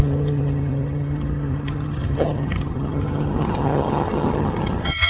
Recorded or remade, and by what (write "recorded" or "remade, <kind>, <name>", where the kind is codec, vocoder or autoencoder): remade, vocoder, HiFi-GAN